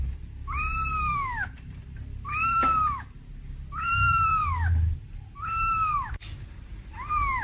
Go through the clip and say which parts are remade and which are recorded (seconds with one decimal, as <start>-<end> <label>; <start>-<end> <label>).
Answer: 0.0-0.7 recorded; 0.7-4.7 remade; 4.7-7.4 recorded